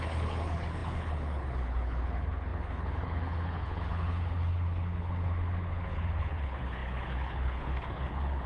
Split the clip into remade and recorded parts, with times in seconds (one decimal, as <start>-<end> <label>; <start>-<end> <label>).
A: 0.0-8.5 remade